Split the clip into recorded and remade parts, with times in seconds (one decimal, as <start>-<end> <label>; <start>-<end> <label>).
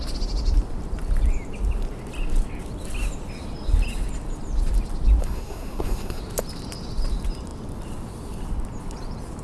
0.0-5.2 recorded; 5.2-6.2 remade; 6.2-9.4 recorded